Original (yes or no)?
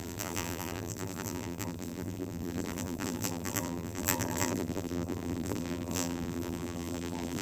no